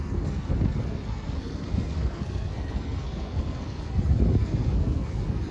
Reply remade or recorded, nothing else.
remade